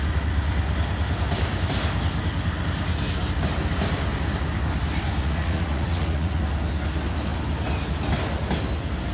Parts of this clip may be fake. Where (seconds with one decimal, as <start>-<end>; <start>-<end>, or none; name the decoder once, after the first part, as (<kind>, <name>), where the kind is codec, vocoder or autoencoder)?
5.2-6.4 (vocoder, Vocos)